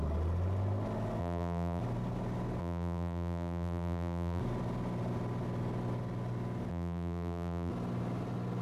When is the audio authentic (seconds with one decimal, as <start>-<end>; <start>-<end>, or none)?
0.0-1.2; 1.8-2.6; 4.4-6.7; 7.7-8.6